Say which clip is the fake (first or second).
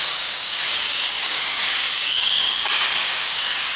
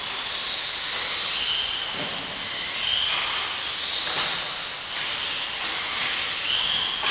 first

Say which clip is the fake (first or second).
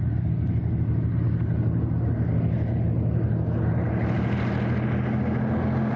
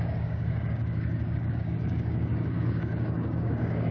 second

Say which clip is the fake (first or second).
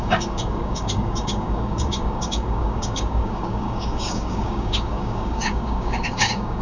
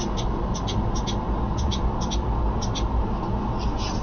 first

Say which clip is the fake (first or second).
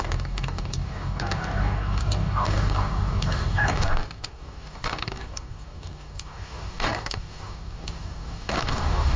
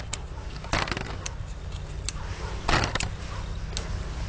first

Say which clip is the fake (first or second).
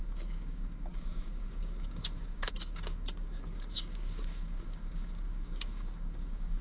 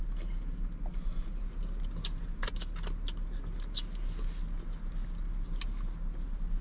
first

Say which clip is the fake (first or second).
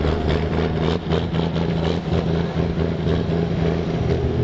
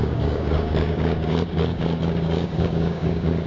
second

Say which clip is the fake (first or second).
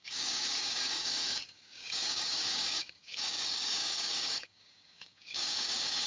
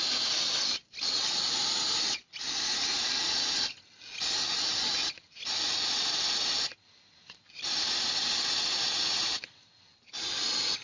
first